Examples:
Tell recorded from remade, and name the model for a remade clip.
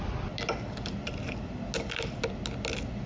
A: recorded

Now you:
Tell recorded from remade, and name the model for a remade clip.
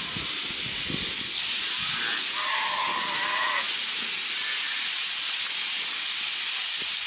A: recorded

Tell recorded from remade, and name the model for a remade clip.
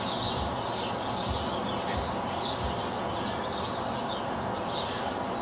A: recorded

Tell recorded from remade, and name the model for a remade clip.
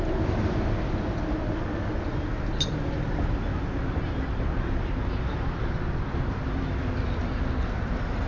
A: recorded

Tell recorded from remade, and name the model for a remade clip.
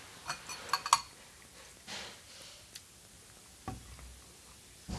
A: recorded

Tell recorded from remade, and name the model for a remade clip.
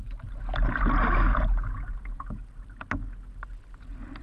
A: recorded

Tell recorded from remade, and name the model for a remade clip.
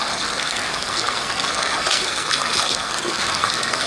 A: remade, codec, SNAC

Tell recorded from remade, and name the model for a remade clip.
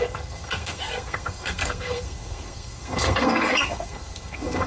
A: remade, codec, SNAC